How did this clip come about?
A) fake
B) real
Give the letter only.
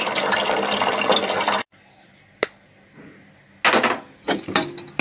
B